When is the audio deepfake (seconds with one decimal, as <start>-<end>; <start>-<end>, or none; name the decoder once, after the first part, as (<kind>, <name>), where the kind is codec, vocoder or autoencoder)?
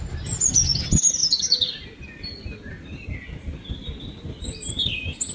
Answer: none